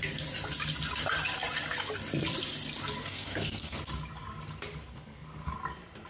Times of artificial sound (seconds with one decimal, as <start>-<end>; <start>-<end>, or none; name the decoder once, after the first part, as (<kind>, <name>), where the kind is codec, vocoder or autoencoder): 3.0-3.8 (codec, SNAC); 4.9-5.5